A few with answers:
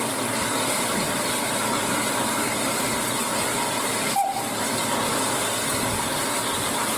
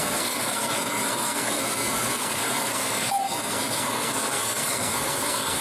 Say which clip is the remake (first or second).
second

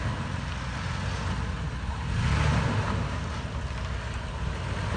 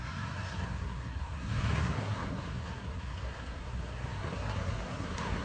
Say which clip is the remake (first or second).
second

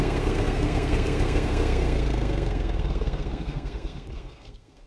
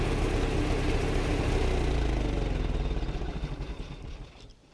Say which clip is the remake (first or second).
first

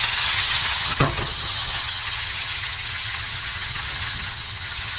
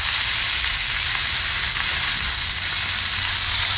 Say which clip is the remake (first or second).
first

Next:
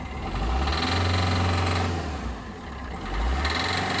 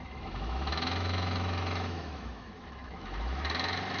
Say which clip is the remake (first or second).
second